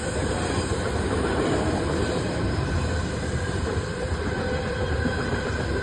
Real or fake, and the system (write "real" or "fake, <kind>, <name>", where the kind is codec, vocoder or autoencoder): fake, vocoder, BigVGAN v2